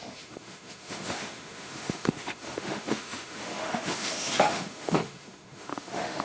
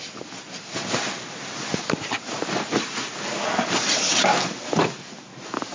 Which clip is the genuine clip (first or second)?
second